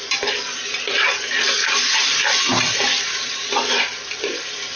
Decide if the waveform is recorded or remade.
recorded